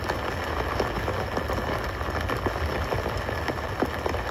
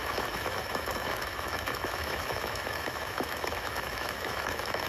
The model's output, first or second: second